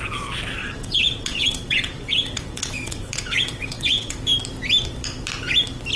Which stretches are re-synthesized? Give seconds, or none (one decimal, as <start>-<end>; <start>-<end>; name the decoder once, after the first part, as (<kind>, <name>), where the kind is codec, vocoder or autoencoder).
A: 0.6-4.2 (vocoder, WaveNeXt)

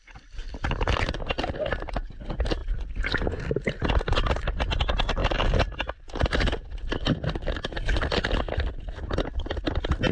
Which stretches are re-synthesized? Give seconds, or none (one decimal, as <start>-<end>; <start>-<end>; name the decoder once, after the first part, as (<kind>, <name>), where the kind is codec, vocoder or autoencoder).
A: none

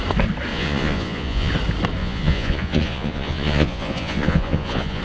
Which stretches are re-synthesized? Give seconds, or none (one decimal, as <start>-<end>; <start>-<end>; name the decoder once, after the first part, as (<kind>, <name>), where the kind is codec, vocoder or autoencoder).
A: 0.5-1.5 (vocoder, Vocos); 2.0-5.0

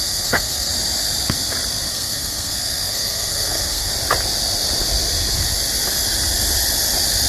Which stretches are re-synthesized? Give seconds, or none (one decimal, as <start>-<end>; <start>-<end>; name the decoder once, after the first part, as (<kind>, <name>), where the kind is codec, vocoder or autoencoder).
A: 0.0-0.7 (codec, SNAC); 1.9-3.9

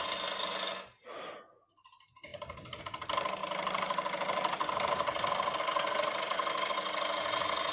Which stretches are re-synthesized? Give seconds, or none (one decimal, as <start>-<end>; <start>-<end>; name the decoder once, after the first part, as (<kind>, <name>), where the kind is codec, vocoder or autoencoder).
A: none

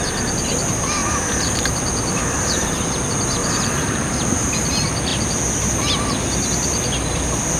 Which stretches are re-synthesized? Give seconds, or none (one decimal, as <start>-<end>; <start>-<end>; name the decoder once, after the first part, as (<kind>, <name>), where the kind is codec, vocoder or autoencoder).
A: 1.0-2.9 (vocoder, BigVGAN v2); 3.4-4.5

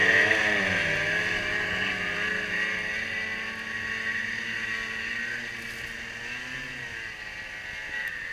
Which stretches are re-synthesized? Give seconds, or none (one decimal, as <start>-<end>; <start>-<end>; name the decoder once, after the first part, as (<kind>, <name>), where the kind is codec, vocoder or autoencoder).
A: none